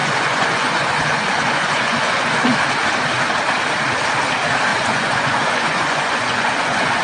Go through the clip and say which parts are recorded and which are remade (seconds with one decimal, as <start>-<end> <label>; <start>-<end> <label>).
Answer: 0.0-2.4 remade; 2.4-4.7 recorded; 4.7-7.0 remade